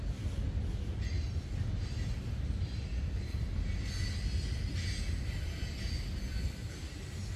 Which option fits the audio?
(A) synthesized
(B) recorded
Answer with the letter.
B